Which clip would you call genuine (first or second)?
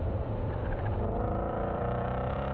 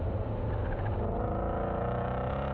second